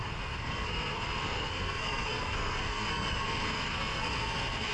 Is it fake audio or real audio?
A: fake